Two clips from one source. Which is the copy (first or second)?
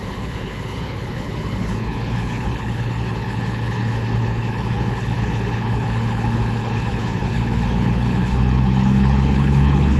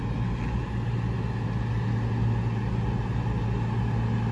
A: first